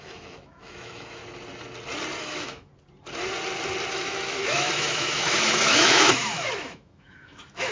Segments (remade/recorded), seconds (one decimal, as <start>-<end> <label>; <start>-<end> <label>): 0.0-1.2 remade; 1.2-2.2 recorded; 2.2-2.7 remade; 2.7-3.9 recorded; 3.9-7.7 remade